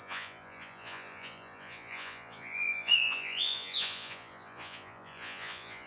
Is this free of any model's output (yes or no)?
no